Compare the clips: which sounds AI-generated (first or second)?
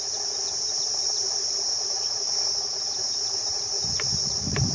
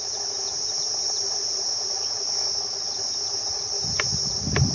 first